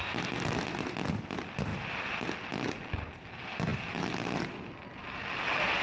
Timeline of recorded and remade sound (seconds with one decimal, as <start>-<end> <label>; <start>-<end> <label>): 0.0-5.8 recorded